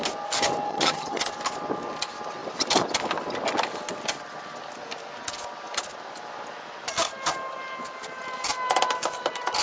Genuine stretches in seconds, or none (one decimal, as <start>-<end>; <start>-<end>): 0.0-0.7; 1.2-9.6